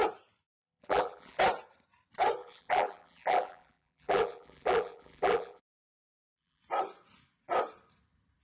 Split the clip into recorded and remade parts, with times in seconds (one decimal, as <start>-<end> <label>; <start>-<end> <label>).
0.0-0.5 recorded; 0.5-1.4 remade; 1.4-2.4 recorded; 2.4-6.6 remade; 6.6-8.4 recorded